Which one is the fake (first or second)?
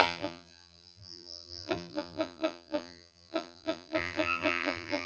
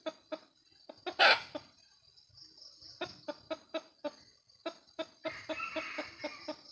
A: first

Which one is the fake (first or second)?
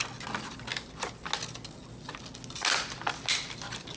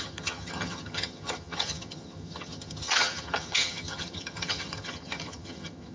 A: second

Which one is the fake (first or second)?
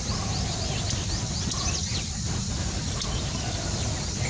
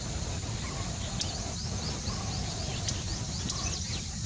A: second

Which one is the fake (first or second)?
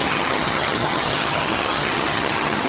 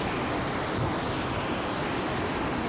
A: first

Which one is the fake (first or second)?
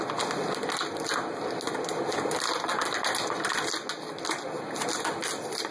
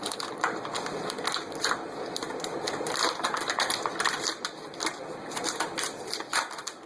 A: second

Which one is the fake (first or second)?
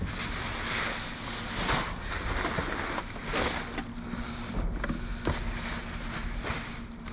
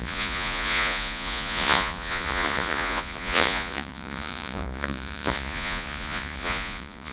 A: second